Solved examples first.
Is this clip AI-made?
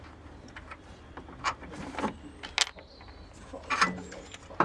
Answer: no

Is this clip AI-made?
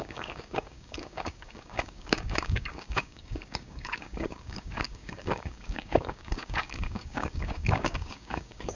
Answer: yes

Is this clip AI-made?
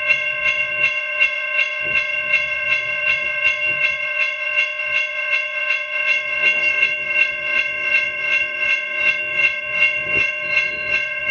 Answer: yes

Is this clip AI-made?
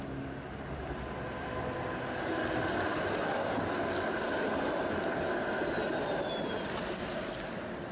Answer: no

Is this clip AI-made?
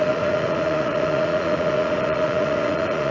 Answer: yes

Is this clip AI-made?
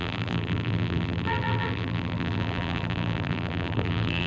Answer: yes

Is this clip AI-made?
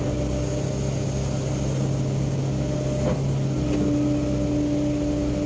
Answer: no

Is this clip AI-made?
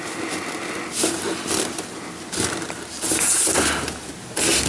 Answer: no